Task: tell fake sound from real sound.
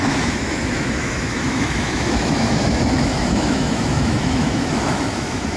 fake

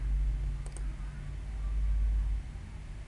real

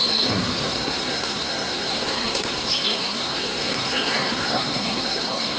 fake